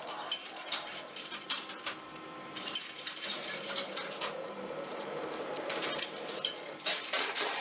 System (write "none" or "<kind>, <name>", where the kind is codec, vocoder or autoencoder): vocoder, BigVGAN v2